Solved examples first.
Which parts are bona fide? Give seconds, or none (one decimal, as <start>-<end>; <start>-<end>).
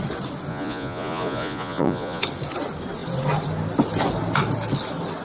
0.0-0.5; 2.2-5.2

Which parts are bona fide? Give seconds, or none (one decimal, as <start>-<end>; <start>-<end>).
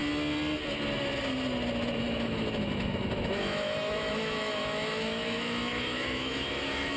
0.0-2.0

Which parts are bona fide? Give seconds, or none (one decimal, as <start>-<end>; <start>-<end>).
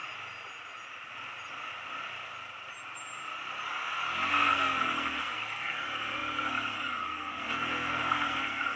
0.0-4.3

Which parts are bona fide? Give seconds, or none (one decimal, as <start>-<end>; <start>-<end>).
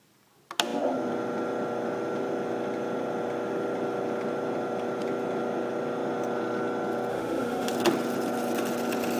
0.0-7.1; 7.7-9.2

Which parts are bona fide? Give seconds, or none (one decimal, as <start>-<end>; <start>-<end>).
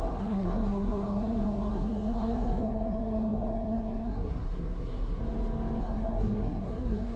5.2-5.8